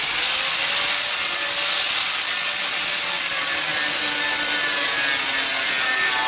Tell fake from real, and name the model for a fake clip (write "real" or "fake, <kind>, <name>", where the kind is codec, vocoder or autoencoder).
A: real